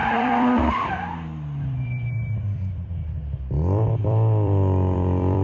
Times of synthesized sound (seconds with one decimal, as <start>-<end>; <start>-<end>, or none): 0.0-5.4